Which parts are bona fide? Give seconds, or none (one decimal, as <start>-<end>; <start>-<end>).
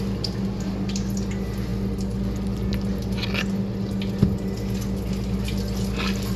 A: 0.0-6.4